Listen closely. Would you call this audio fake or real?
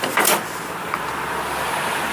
real